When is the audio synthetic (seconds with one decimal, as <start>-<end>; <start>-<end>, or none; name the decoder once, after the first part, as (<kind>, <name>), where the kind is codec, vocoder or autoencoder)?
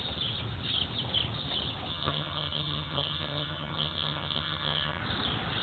1.9-5.0 (vocoder, HiFi-GAN)